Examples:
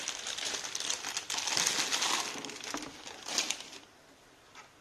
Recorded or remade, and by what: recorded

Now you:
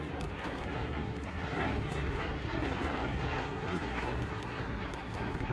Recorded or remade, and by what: remade, codec, SNAC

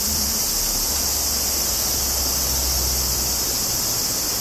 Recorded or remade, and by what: recorded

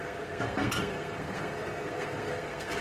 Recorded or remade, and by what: remade, codec, SNAC